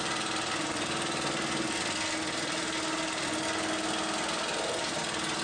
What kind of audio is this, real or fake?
real